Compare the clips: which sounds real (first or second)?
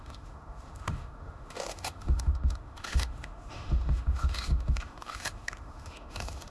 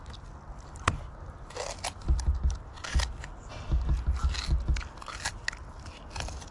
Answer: second